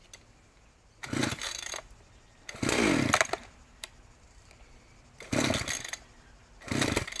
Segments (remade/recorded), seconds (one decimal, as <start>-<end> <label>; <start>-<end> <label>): 0.0-1.2 recorded; 1.2-1.7 remade; 1.7-3.4 recorded; 3.4-4.0 remade; 4.0-7.2 recorded

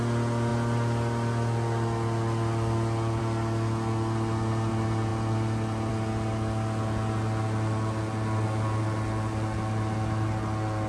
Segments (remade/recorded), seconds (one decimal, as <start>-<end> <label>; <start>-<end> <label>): 0.0-10.9 recorded

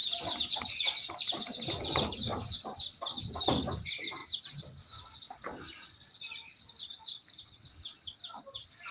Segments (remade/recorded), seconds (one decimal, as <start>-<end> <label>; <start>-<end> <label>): 0.0-1.1 recorded; 1.1-2.3 remade; 2.3-3.2 recorded; 3.2-4.2 remade; 4.2-8.4 recorded; 8.4-8.9 remade

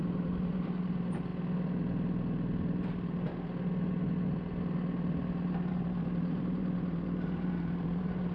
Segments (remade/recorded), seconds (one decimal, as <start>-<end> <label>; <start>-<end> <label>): 0.0-1.3 remade; 1.3-5.7 recorded; 5.7-8.3 remade

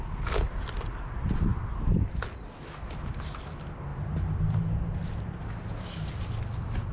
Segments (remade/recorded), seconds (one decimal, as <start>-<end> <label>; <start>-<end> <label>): 0.0-3.9 recorded; 3.9-4.6 remade; 4.6-6.9 recorded

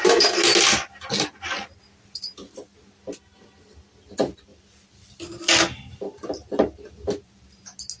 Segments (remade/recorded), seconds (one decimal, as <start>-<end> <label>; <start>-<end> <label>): 0.0-4.5 recorded; 4.5-7.1 remade; 7.1-8.0 recorded

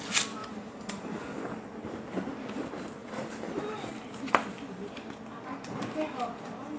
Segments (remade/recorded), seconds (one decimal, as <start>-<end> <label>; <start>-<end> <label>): 0.0-0.4 recorded; 0.4-1.2 remade; 1.2-3.0 recorded; 3.0-3.6 remade; 3.6-6.8 recorded

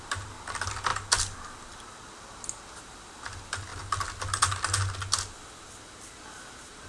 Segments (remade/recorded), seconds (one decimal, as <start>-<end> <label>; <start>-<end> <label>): 0.0-0.9 recorded; 0.9-2.3 remade; 2.3-6.9 recorded